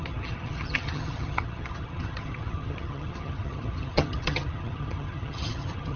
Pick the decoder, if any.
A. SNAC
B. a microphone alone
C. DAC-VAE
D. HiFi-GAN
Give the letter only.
D